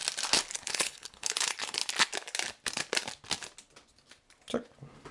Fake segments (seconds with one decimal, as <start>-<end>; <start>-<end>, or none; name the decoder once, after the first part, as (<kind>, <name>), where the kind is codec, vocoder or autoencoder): 0.7-1.8 (codec, HILCodec)